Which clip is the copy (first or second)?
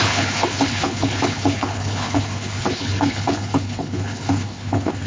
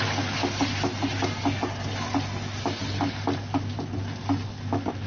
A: first